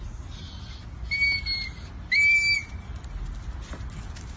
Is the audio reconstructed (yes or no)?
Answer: no